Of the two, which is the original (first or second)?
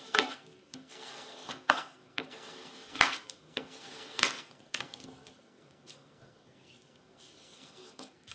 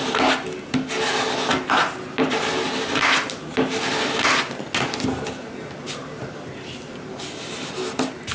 second